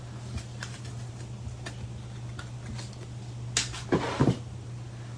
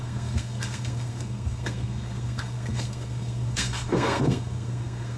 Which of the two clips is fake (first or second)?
second